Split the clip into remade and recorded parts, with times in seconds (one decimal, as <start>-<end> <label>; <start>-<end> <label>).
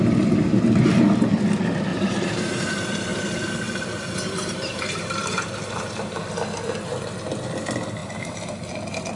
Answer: 0.0-1.9 recorded; 1.9-2.5 remade; 2.5-3.1 recorded; 3.1-6.2 remade; 6.2-8.0 recorded; 8.0-8.7 remade; 8.7-9.2 recorded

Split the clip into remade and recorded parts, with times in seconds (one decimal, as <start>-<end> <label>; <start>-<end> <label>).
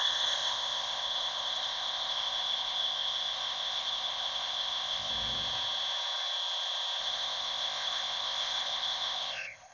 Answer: 0.0-5.1 remade; 5.1-7.0 recorded; 7.0-9.7 remade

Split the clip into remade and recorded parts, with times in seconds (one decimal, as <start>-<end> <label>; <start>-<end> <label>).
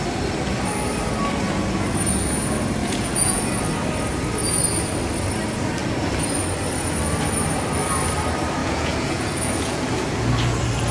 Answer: 0.0-2.8 recorded; 2.8-3.4 remade; 3.4-8.6 recorded; 8.6-9.8 remade; 9.8-10.9 recorded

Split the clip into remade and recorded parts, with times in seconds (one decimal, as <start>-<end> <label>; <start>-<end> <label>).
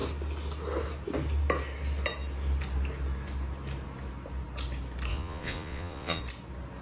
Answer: 0.0-5.1 recorded; 5.1-6.2 remade; 6.2-6.8 recorded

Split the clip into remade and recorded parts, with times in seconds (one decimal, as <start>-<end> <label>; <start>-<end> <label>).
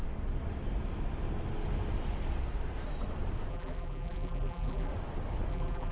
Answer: 0.0-3.5 recorded; 3.5-4.9 remade; 4.9-5.5 recorded; 5.5-5.9 remade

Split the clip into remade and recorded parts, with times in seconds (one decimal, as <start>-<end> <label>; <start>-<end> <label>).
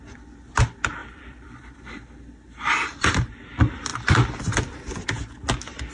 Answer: 0.0-1.0 recorded; 1.0-3.3 remade; 3.3-3.9 recorded; 3.9-4.5 remade; 4.5-5.9 recorded